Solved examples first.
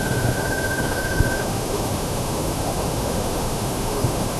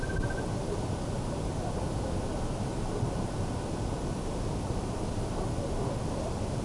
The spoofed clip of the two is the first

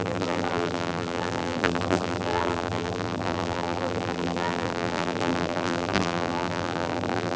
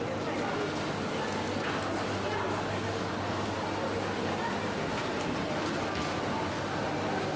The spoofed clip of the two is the first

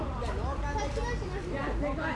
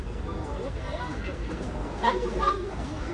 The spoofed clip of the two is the second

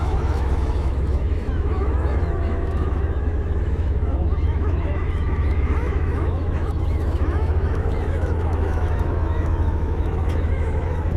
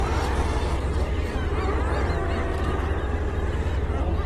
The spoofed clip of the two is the first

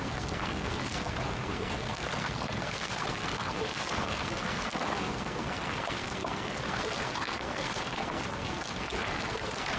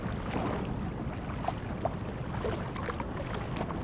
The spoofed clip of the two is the first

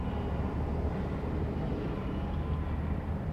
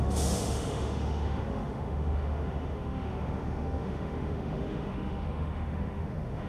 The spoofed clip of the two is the second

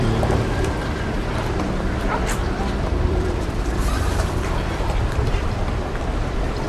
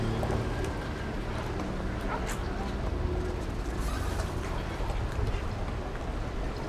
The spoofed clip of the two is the first